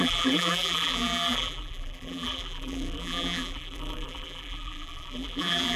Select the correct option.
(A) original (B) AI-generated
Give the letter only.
B